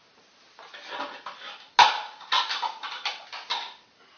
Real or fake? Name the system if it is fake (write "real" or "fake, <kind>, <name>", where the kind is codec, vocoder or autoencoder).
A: real